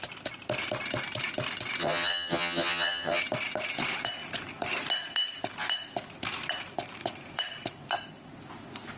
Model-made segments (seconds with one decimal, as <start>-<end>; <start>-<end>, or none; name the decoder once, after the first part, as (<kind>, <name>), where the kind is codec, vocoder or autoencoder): 1.8-3.2 (vocoder, HiFi-GAN)